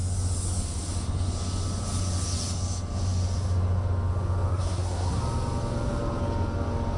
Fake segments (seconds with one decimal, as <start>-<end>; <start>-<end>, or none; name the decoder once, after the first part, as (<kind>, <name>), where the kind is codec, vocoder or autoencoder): 4.5-5.2 (codec, SNAC)